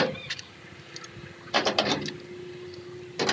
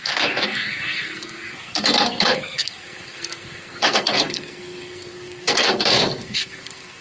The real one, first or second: first